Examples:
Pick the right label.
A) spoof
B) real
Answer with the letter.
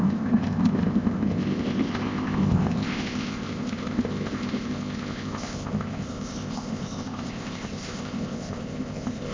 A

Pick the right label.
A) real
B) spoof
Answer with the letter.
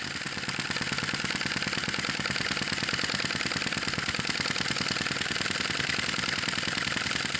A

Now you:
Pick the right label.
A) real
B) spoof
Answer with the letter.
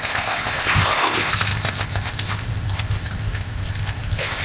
B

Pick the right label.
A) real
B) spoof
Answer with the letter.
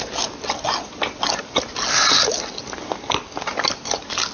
A